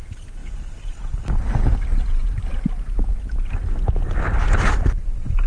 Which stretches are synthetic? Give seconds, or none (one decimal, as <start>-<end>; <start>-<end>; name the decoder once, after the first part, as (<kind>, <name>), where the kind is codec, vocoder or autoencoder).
none